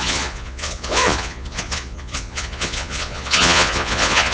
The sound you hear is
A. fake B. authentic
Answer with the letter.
A